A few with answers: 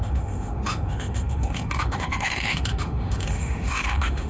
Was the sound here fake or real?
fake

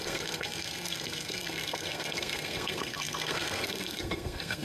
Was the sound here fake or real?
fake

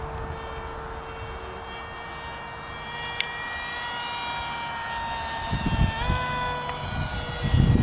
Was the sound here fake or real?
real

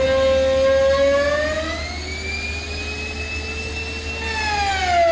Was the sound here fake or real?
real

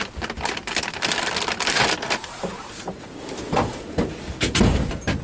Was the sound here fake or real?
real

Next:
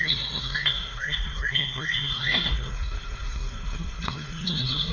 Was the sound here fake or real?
fake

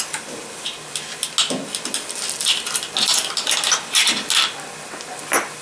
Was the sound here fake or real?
real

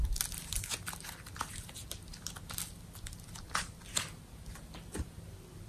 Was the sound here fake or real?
real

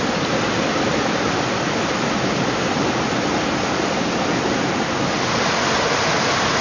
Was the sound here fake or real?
real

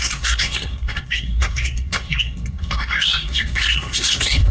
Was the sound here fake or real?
fake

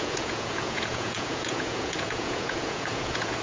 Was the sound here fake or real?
fake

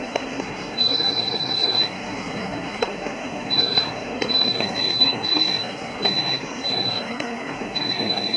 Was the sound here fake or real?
fake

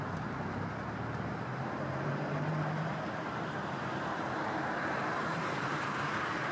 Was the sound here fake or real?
fake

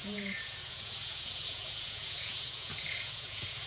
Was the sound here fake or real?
fake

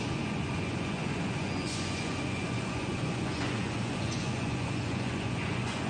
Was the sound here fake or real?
fake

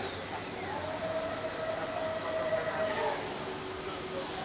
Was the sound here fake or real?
real